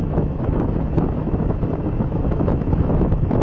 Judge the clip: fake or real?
fake